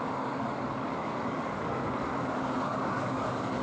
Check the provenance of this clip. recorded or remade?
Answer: remade